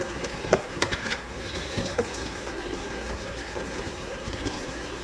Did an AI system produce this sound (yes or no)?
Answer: yes